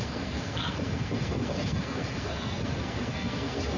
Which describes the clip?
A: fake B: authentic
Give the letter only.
A